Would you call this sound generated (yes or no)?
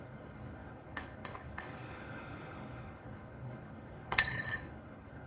yes